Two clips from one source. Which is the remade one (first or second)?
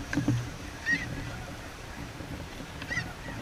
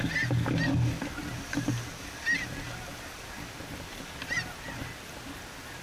first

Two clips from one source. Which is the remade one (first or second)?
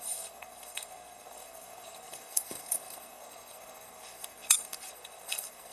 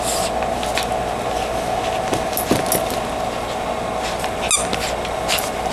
first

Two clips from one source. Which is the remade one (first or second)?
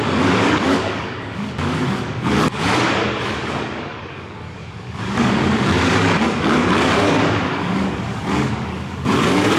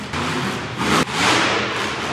first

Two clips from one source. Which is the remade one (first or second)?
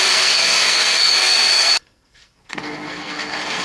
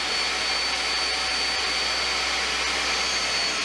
first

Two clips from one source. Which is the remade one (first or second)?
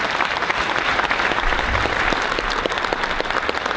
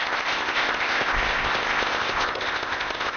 second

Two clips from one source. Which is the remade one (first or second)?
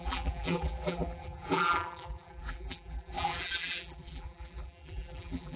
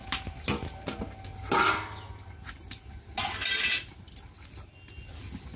first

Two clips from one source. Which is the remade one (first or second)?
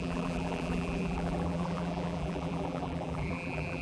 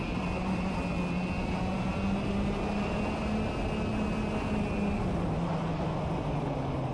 first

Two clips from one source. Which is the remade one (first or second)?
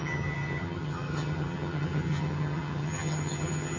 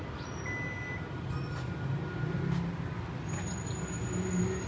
first